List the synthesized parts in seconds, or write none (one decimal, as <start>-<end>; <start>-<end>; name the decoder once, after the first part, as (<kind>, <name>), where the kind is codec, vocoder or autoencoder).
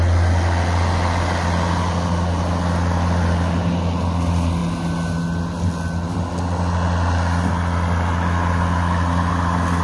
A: none